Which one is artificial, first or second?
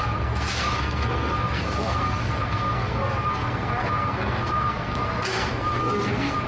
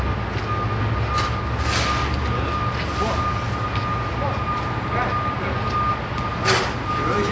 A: first